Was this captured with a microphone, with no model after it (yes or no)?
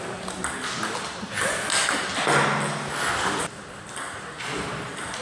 yes